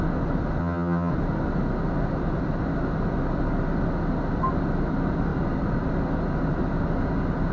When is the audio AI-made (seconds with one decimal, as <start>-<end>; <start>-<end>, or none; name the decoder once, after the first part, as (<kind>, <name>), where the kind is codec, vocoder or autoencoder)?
0.6-1.1 (vocoder, HiFi-GAN)